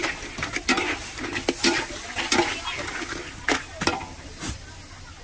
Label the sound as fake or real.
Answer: real